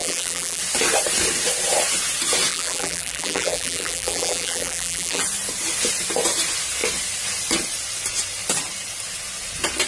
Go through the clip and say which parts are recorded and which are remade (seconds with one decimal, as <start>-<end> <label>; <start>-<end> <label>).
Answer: 0.0-0.6 remade; 0.6-2.5 recorded; 2.5-5.2 remade; 5.2-9.9 recorded